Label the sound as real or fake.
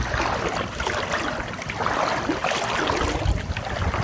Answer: real